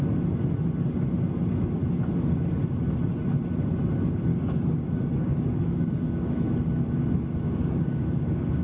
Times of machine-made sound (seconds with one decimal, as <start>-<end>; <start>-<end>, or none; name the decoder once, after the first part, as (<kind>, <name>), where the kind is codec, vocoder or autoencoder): 4.3-8.6 (codec, DAC)